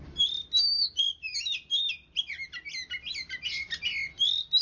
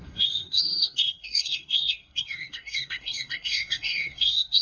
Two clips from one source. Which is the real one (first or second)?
first